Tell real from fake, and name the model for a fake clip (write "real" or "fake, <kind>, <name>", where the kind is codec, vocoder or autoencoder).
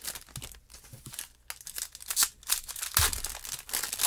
real